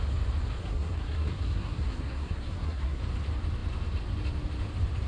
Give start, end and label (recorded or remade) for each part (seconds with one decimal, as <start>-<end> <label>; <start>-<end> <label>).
0.0-0.6 recorded; 0.6-3.0 remade; 3.0-5.1 recorded